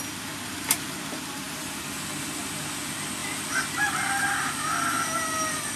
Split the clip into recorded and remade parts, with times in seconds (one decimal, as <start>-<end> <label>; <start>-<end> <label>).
0.0-5.8 recorded